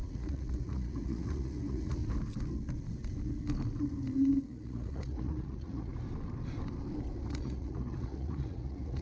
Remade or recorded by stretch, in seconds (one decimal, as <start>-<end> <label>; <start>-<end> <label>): 0.0-2.0 remade; 2.0-4.4 recorded; 4.4-5.9 remade; 5.9-7.3 recorded; 7.3-9.0 remade